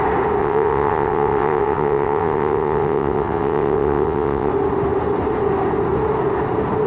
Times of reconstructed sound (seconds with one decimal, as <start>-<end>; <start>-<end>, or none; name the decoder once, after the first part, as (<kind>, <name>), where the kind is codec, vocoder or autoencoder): 0.4-4.5 (vocoder, WaveNeXt)